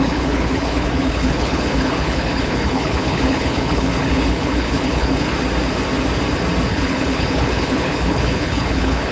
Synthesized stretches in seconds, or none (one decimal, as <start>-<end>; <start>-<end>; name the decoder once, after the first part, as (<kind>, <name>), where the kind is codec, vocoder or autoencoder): 0.0-5.3 (codec, HILCodec); 6.7-9.1

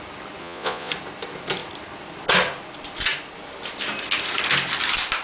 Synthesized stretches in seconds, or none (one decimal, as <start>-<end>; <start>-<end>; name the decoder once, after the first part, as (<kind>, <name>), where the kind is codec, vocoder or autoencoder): 0.4-0.9 (vocoder, Vocos)

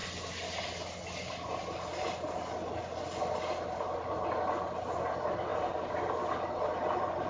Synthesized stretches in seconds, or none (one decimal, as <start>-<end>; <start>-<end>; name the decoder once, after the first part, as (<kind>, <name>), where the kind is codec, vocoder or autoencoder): none